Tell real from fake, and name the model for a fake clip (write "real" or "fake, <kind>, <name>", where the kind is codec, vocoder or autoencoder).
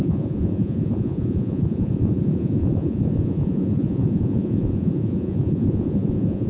fake, vocoder, Vocos